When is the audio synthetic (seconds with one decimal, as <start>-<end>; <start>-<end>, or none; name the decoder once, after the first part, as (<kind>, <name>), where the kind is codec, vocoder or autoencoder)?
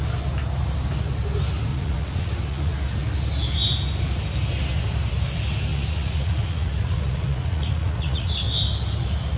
1.7-2.7 (vocoder, Vocos); 5.7-8.3